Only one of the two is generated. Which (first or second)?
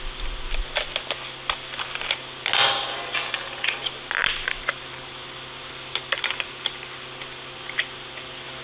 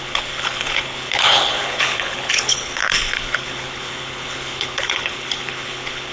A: second